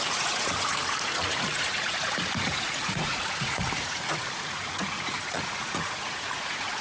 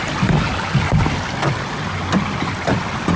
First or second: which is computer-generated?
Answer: first